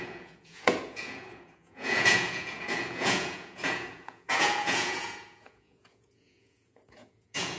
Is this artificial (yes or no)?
yes